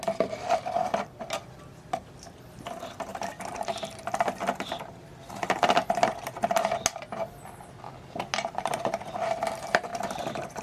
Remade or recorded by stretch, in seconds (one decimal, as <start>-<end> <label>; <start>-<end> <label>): 0.0-10.6 recorded